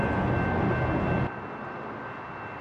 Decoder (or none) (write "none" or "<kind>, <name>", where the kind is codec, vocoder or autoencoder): none